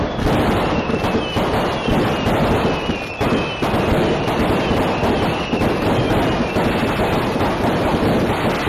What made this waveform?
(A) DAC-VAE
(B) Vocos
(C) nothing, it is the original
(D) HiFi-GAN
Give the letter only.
C